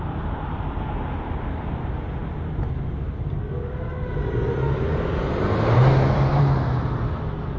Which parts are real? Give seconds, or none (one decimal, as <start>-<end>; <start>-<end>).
0.0-7.6